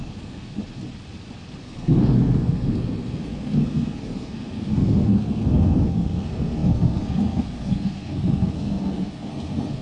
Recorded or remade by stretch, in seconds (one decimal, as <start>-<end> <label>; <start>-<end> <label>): 0.0-0.6 remade; 0.6-1.6 recorded; 1.6-9.8 remade